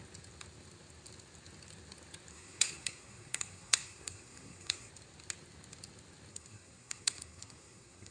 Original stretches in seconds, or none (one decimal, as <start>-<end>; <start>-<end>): 0.0-2.3; 4.9-6.3